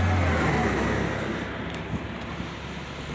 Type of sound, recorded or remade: recorded